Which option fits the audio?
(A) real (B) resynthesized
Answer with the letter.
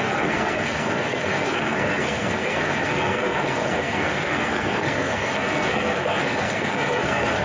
B